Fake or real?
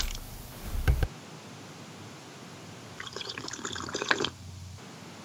real